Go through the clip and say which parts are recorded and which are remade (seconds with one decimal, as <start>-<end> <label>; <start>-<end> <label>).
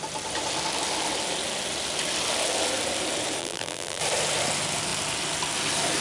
0.0-3.4 recorded; 3.4-4.0 remade; 4.0-6.0 recorded